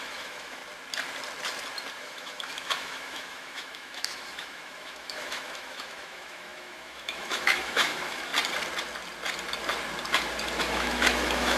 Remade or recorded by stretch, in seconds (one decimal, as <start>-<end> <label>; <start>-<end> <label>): 0.0-0.6 remade; 0.6-1.9 recorded; 1.9-8.3 remade; 8.3-10.6 recorded; 10.6-11.6 remade